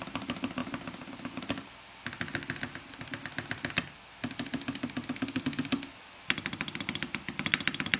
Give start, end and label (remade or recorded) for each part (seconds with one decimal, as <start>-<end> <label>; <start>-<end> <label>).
0.0-8.0 recorded